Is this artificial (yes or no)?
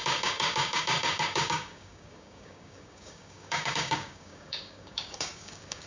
yes